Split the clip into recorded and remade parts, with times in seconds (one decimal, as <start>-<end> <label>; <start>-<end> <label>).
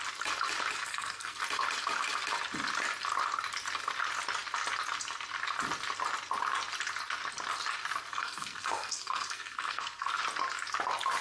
0.0-0.9 recorded; 0.9-1.4 remade; 1.4-8.1 recorded; 8.1-10.2 remade; 10.2-11.2 recorded